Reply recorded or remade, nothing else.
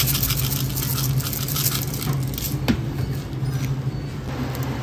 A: recorded